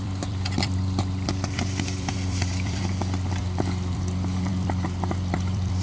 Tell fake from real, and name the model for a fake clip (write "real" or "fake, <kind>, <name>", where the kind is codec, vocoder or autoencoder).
fake, vocoder, BigVGAN v2